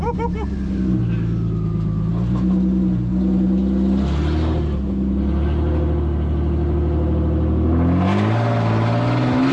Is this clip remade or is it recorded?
recorded